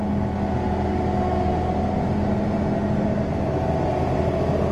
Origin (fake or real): real